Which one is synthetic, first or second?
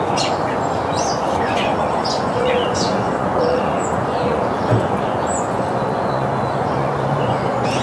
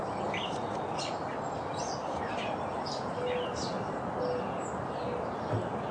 first